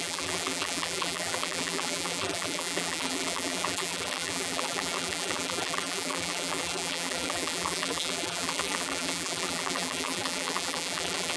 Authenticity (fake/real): fake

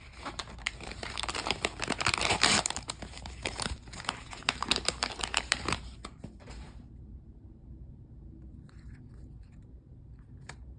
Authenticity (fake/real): fake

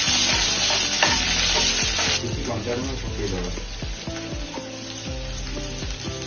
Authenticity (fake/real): real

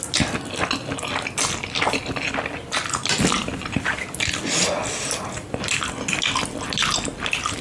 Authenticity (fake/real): real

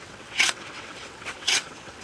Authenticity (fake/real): fake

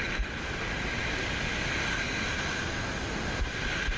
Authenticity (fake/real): real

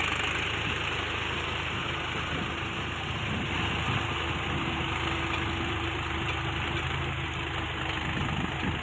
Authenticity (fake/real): real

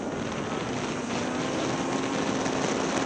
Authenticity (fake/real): real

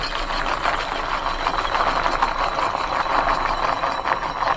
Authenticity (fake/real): real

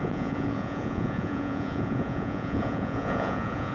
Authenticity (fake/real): fake